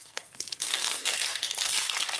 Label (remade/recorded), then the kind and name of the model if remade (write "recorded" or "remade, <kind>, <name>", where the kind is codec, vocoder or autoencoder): remade, codec, SNAC